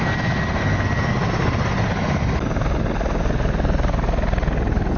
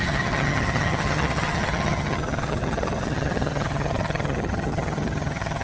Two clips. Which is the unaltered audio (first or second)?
first